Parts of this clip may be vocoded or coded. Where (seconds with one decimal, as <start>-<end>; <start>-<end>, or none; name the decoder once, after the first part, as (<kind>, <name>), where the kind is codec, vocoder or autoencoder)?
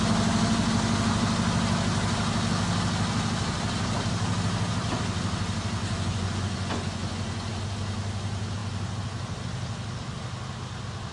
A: 5.8-7.5 (vocoder, Vocos)